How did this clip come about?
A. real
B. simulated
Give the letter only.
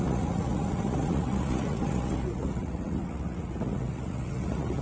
B